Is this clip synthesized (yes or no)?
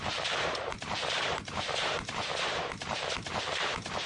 yes